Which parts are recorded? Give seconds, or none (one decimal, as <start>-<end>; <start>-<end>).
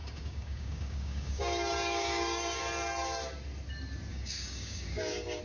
2.6-4.1